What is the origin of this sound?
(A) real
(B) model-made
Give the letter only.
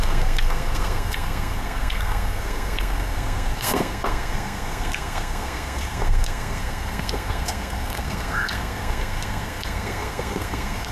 B